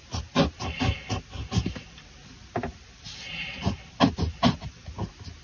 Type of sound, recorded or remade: recorded